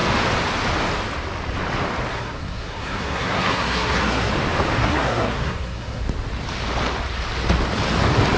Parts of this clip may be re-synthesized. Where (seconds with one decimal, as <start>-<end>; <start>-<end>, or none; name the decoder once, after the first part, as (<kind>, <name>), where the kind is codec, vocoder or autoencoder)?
2.1-4.3 (codec, SNAC); 4.8-6.0